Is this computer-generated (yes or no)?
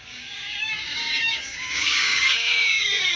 yes